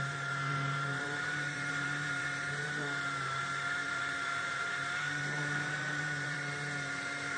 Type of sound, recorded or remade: remade